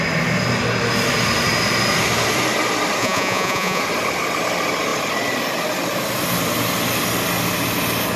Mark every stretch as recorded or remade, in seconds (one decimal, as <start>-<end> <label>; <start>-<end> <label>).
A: 0.0-3.0 recorded; 3.0-3.8 remade; 3.8-8.2 recorded